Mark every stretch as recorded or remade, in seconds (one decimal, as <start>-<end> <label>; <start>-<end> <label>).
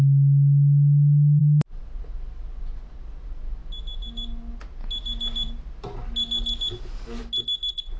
0.0-8.0 recorded